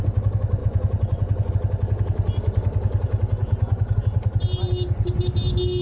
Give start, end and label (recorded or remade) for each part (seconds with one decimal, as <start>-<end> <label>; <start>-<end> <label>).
0.0-0.6 recorded; 0.6-1.5 remade; 1.5-5.8 recorded